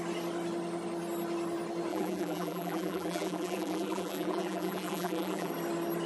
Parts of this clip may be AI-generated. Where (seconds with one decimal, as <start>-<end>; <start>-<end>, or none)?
1.9-5.5